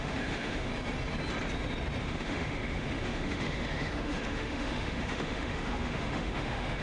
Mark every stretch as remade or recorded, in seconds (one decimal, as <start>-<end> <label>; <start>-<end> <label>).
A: 0.0-0.7 remade; 0.7-2.0 recorded; 2.0-6.8 remade